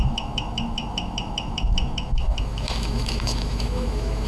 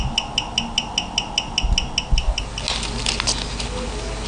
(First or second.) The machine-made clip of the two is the first